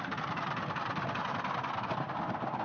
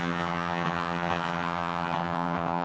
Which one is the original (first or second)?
first